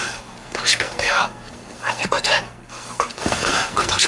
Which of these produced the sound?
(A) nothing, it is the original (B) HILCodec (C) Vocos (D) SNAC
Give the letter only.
D